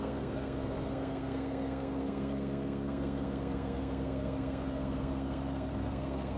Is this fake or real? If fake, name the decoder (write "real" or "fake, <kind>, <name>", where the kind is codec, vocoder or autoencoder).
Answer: fake, codec, SNAC